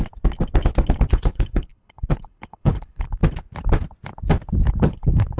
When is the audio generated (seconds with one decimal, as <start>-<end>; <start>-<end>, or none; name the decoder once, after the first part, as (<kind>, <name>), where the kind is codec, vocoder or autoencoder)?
1.1-3.2 (codec, HILCodec); 4.8-5.4